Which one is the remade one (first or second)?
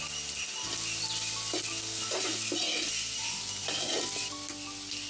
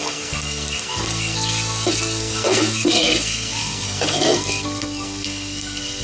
second